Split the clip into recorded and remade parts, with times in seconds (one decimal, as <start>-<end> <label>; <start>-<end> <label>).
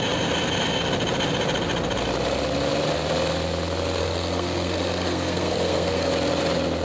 0.0-4.0 recorded; 4.0-6.1 remade; 6.1-6.8 recorded